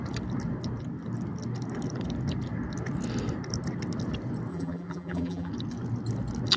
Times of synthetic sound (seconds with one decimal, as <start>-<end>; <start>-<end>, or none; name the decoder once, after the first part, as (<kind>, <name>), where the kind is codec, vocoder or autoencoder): 4.5-5.5 (vocoder, BigVGAN v2)